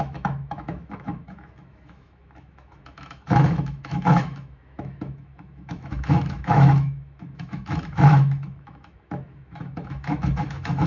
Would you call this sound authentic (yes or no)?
no